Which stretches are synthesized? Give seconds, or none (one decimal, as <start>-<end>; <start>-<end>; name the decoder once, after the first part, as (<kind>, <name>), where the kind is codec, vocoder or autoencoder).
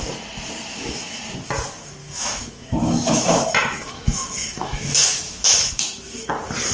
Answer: 0.7-1.2 (autoencoder, DAC-VAE); 2.0-3.2; 3.6-6.3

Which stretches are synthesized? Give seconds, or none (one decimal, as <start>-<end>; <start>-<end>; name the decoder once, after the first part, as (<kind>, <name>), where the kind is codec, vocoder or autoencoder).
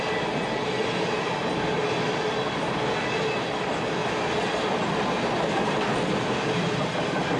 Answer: none